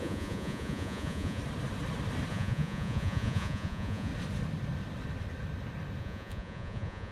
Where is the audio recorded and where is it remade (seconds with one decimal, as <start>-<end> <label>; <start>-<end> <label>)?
0.0-1.4 remade; 1.4-2.3 recorded; 2.3-4.1 remade; 4.1-6.0 recorded; 6.0-7.1 remade